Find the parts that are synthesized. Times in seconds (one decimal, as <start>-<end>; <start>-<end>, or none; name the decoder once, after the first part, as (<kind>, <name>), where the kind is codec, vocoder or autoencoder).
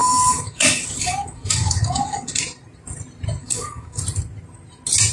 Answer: 0.0-2.4 (codec, DAC); 3.4-4.0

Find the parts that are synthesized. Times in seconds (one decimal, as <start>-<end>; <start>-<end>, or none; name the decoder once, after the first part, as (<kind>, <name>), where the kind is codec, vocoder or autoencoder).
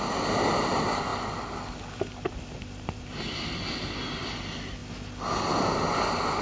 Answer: none